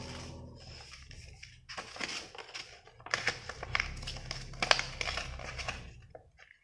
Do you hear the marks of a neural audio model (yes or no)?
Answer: no